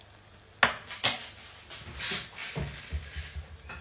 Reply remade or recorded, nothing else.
recorded